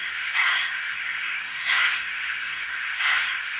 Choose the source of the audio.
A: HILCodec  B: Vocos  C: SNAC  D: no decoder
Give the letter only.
C